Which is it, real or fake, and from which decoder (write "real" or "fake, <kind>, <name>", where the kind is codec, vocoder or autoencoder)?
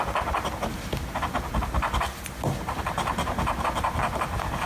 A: real